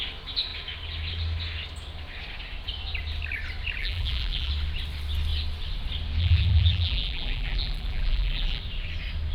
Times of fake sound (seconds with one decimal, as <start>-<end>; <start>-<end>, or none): 3.8-4.5; 6.2-8.6